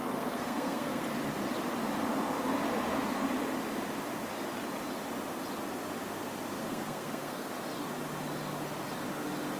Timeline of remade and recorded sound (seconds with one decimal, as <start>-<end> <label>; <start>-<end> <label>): 0.0-1.0 remade; 1.0-6.6 recorded; 6.6-7.5 remade; 7.5-9.6 recorded